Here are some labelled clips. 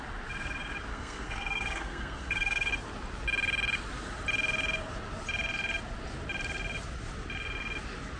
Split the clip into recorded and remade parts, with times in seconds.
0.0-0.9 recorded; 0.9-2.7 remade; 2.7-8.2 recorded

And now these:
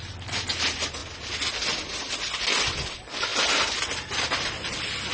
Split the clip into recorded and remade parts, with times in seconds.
0.0-5.1 recorded

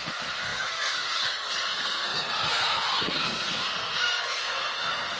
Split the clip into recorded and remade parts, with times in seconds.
0.0-5.2 remade